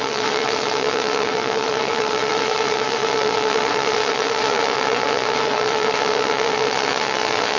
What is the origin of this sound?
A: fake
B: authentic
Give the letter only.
A